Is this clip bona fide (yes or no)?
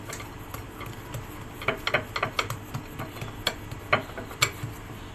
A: yes